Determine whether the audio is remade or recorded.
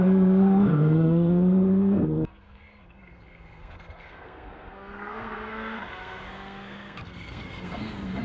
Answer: remade